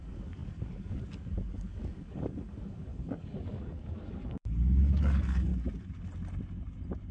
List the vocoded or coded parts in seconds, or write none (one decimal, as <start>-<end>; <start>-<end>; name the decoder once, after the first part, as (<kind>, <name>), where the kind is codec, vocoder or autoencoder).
0.0-5.5 (codec, DAC)